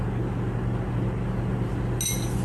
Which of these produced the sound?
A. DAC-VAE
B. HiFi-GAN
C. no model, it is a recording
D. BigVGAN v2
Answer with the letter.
C